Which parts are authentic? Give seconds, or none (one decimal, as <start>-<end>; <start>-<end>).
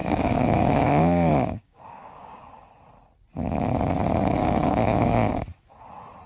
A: 2.5-4.4; 5.3-6.3